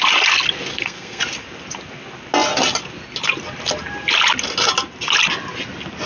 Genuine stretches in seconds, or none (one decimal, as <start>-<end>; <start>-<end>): 0.0-0.7; 1.2-6.1